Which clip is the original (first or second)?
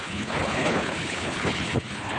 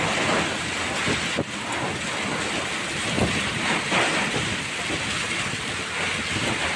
second